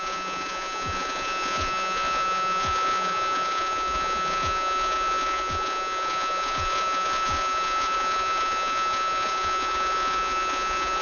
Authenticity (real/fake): fake